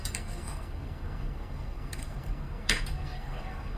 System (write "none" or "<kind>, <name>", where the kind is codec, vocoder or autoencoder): codec, SNAC